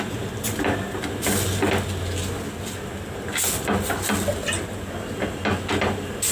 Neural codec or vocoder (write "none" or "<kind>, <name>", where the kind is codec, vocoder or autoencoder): none